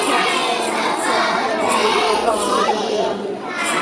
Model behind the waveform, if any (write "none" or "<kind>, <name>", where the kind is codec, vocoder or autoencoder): vocoder, WaveNeXt